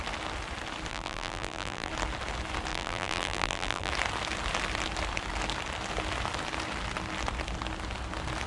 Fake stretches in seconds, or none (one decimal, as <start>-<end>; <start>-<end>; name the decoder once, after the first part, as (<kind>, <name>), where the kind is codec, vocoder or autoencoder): 0.9-1.9 (vocoder, BigVGAN v2); 2.7-3.9